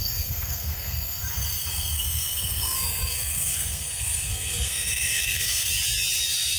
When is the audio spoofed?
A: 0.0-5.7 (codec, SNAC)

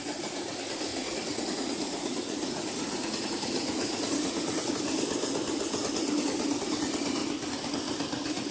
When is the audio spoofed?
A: 0.9-4.7 (vocoder, Vocos)

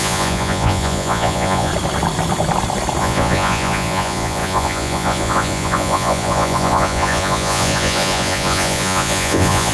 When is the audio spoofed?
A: 0.0-1.7 (vocoder, Vocos); 3.0-9.7

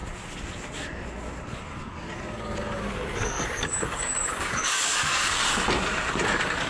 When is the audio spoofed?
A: 1.6-5.4 (codec, DAC); 6.1-6.7

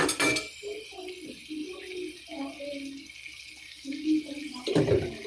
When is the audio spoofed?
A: none

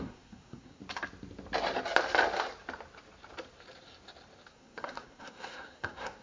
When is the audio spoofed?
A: 0.0-0.8 (codec, SNAC); 4.5-6.2

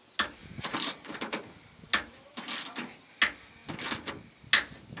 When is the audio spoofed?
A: 0.4-1.4 (vocoder, BigVGAN v2)